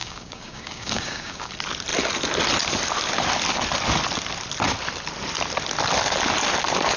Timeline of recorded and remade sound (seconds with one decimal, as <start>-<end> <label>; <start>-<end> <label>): 0.0-1.5 remade; 1.5-7.0 recorded